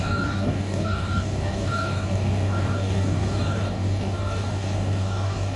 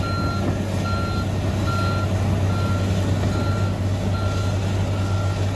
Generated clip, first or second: first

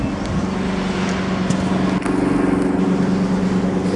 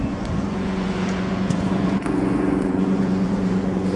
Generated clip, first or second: second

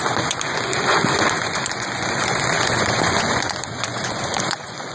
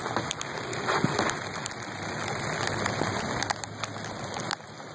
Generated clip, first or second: first